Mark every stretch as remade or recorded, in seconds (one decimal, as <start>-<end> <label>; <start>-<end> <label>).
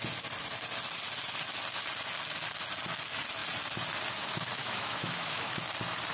0.0-4.6 recorded; 4.6-5.6 remade; 5.6-6.1 recorded